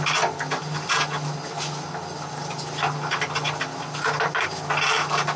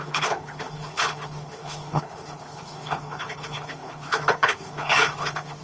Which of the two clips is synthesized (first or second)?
second